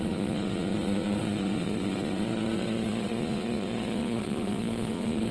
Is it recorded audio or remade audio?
remade